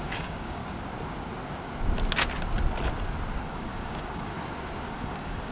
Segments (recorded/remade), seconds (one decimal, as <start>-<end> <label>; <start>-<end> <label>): 0.0-0.6 remade; 0.6-3.5 recorded; 3.5-4.3 remade; 4.3-4.9 recorded; 4.9-5.5 remade